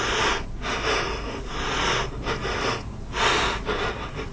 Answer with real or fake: real